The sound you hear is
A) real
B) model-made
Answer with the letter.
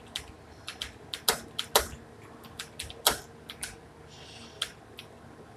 A